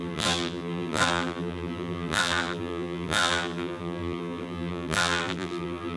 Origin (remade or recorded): remade